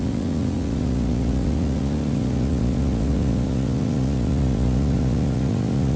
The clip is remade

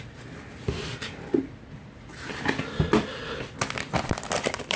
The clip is recorded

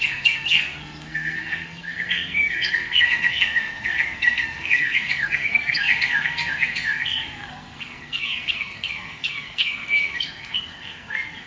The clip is remade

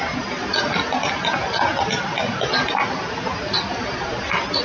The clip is recorded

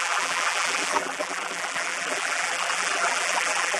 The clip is remade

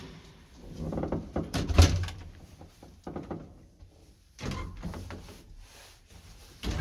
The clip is remade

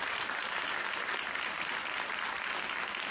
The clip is recorded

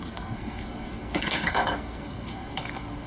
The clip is remade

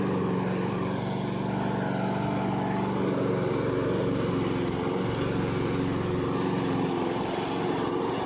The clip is recorded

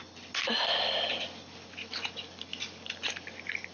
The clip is recorded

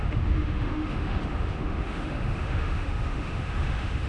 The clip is remade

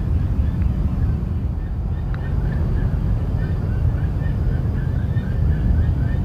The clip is recorded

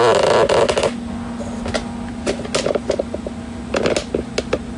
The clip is recorded